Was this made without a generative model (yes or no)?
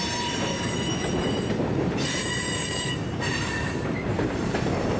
no